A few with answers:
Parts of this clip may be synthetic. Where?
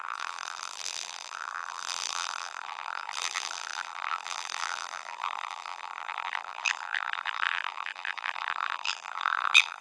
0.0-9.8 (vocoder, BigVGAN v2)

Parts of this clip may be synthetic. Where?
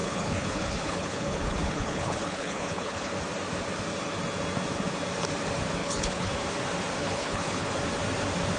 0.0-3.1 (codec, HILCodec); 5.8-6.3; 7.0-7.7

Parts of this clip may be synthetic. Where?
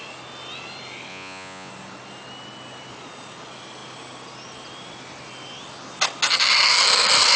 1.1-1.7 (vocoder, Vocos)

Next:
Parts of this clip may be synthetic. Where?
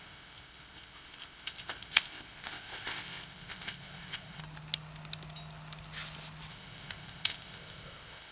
0.0-4.4 (codec, ZipCodec); 6.5-8.3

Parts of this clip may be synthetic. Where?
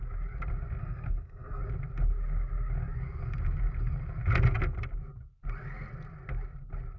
0.8-1.6 (codec, SNAC)